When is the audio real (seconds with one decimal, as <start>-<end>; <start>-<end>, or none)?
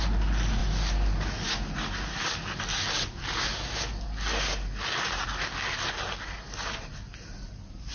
0.0-7.9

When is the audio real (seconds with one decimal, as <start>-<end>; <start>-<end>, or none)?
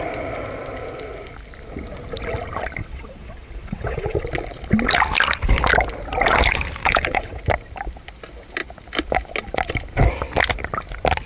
0.0-2.8; 4.2-6.8; 7.4-11.3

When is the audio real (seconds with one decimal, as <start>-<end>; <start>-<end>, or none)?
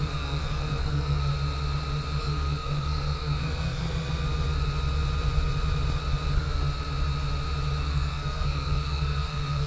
1.3-2.2; 3.8-7.8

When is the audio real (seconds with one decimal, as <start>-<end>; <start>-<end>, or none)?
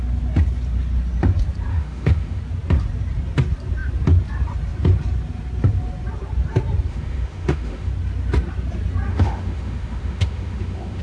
0.0-1.7; 2.4-6.9; 7.9-9.1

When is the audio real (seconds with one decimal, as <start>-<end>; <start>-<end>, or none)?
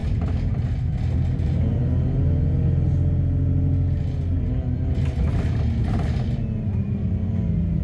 0.0-7.8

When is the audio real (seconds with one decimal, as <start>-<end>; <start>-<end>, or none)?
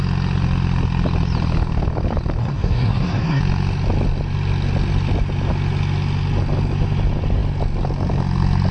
0.0-2.4; 3.4-8.7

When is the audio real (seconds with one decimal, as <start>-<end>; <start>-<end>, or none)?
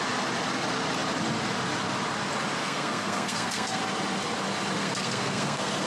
0.0-2.6; 3.8-4.8